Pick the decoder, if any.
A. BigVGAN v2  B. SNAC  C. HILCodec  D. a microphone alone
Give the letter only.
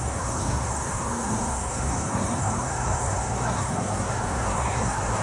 B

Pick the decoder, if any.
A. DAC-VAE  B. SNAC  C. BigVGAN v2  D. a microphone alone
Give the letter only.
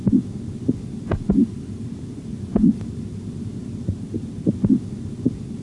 D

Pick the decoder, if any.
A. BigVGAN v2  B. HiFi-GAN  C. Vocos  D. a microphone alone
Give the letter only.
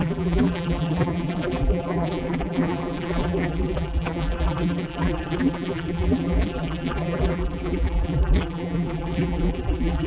A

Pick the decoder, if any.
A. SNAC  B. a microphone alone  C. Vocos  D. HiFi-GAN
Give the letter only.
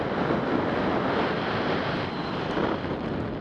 B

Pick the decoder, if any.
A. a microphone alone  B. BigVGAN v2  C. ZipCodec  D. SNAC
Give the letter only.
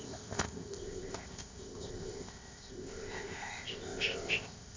C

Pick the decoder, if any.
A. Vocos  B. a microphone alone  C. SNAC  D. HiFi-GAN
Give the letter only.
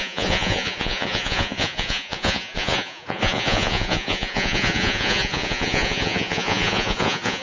A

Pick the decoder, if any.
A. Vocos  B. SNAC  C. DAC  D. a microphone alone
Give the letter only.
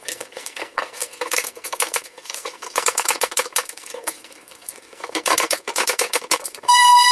B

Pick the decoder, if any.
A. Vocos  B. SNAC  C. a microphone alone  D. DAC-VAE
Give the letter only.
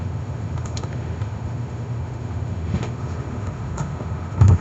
D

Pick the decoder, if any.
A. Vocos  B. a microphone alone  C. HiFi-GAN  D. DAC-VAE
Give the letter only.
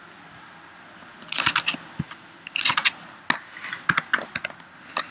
B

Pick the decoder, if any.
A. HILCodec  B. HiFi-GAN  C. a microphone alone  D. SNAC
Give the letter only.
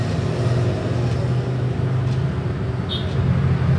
C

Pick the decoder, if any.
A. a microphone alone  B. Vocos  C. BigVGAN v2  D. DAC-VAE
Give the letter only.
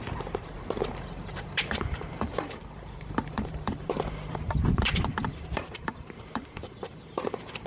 C